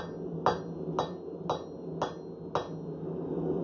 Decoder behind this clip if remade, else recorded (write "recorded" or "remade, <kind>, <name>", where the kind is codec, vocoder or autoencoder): recorded